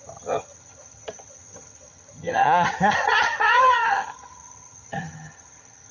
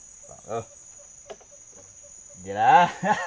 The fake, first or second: first